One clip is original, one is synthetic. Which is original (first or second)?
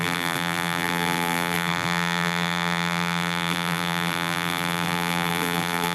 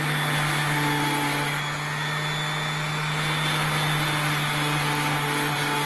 second